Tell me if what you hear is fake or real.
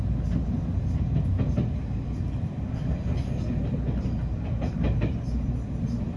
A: real